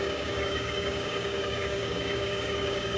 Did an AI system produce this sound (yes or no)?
yes